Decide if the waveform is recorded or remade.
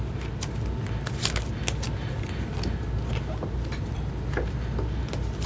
recorded